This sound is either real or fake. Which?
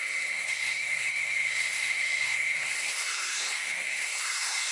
fake